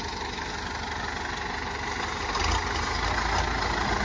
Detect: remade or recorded recorded